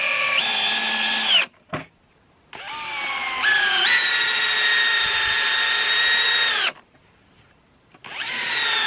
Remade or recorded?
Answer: recorded